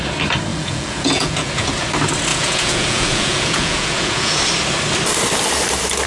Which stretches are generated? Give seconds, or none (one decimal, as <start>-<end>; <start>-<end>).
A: 0.5-1.7; 2.3-4.4